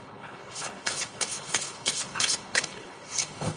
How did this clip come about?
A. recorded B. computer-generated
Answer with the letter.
B